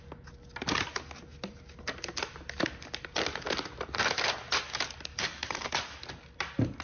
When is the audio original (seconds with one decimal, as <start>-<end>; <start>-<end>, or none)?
0.0-5.1; 5.7-6.8

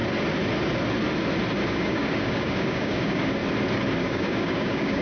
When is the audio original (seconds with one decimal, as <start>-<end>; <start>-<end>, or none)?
0.0-1.7; 3.4-4.0

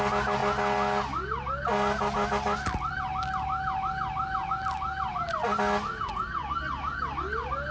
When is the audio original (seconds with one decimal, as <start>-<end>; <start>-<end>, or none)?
0.0-7.7

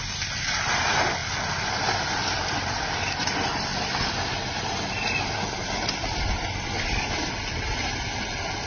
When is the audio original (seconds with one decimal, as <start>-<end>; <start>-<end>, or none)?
0.0-8.7

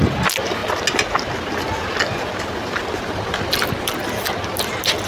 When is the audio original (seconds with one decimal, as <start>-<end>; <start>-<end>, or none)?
0.0-5.1

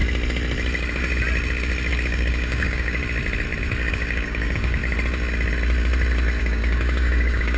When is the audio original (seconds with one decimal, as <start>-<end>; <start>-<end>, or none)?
0.0-1.9; 3.0-3.9; 4.8-6.4

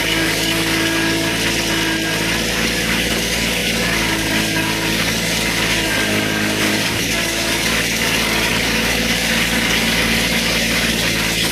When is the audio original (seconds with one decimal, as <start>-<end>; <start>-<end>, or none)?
1.3-2.5